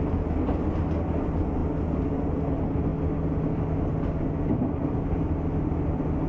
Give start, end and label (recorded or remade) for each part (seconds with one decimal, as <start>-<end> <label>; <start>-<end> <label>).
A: 0.0-6.3 recorded

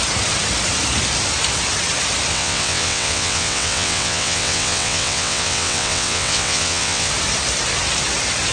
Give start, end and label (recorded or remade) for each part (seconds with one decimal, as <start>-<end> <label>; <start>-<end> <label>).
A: 0.0-2.3 recorded; 2.3-7.1 remade; 7.1-8.5 recorded

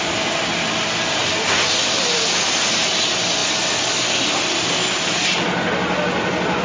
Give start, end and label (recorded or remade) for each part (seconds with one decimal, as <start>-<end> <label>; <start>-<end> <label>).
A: 0.0-6.6 recorded

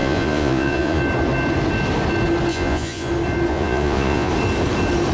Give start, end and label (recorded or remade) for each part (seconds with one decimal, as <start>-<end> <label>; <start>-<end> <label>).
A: 0.0-1.0 remade; 1.0-2.5 recorded; 2.5-3.1 remade; 3.1-3.5 recorded; 3.5-4.3 remade; 4.3-5.1 recorded